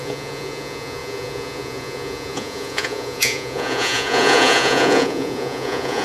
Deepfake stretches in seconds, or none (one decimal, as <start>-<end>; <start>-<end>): 0.0-6.0

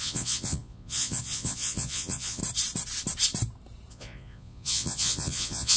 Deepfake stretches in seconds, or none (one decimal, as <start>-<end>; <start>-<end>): 0.0-2.4; 3.9-5.8